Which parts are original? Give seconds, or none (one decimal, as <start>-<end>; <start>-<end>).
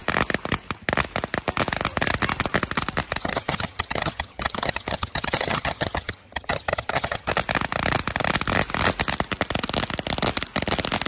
0.0-3.2; 7.3-11.1